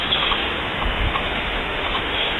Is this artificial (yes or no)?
yes